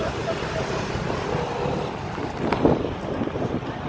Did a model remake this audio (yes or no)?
no